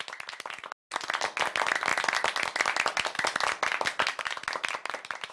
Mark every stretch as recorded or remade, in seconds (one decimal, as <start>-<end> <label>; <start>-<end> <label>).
0.0-5.3 recorded